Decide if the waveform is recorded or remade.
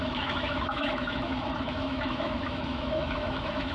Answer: remade